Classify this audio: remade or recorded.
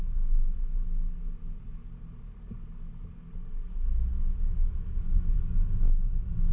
recorded